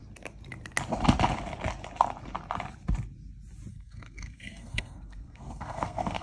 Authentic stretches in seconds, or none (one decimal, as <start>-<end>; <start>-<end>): 0.0-3.7